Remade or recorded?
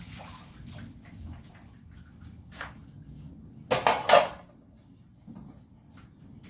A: recorded